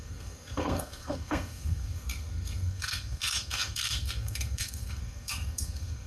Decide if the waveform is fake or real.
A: fake